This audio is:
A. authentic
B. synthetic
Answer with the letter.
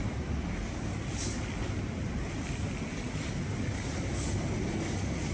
A